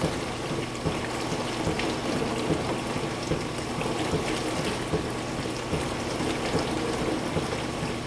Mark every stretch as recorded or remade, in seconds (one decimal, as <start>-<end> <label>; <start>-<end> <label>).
0.0-8.1 recorded